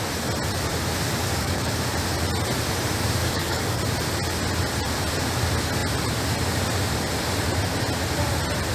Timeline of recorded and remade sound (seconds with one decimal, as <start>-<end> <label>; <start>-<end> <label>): 0.0-1.2 recorded; 1.2-1.7 remade; 1.7-3.2 recorded; 3.2-3.8 remade; 3.8-8.7 recorded